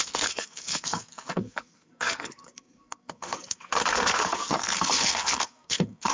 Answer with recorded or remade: remade